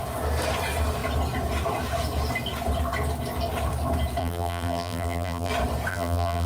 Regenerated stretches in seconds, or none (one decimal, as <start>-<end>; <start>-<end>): 4.2-5.5; 5.9-6.5